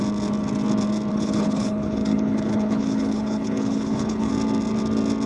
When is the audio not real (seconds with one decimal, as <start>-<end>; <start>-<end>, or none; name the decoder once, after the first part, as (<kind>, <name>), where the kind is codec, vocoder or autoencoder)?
1.1-4.3 (codec, HILCodec)